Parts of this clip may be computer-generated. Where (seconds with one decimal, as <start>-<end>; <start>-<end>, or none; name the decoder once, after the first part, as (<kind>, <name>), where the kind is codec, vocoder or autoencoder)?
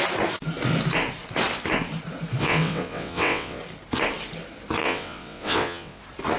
2.4-3.6 (vocoder, WaveNeXt); 4.8-6.0